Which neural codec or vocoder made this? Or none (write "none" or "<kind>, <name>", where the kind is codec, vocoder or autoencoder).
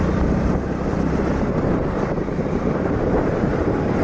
none